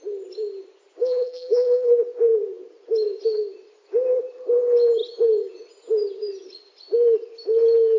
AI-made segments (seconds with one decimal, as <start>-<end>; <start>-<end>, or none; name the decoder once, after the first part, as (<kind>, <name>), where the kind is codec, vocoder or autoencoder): 1.0-1.9 (vocoder, BigVGAN v2)